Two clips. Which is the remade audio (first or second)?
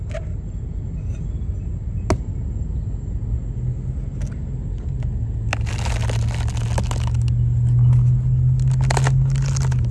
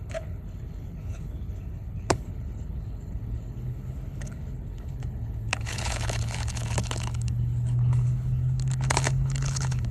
second